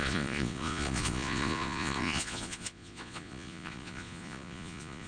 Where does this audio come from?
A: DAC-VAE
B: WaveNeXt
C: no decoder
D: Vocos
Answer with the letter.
D